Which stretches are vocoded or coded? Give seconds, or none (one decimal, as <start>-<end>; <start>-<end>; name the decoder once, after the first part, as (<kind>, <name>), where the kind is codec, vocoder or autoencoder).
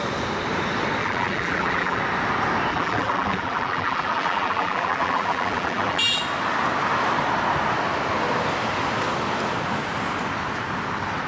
1.0-2.0 (vocoder, BigVGAN v2); 2.7-6.2